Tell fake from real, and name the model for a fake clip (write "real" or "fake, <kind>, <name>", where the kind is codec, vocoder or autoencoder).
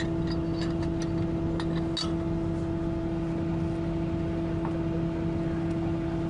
real